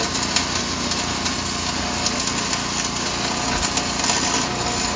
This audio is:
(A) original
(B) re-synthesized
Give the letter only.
A